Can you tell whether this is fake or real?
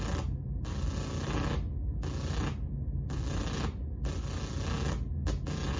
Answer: real